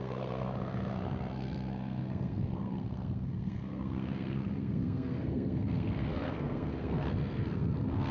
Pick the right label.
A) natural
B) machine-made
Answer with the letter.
B